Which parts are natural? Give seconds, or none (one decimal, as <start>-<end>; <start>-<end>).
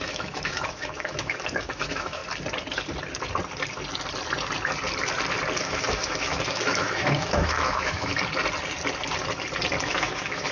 2.2-5.6; 8.1-9.8